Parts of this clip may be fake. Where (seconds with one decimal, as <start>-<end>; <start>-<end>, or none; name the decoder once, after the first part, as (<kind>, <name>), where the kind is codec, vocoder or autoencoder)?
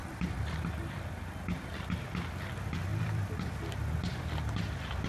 0.0-1.2 (vocoder, BigVGAN v2); 2.9-3.5